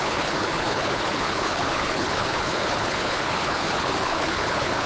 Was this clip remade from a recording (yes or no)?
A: yes